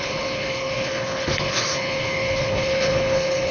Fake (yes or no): yes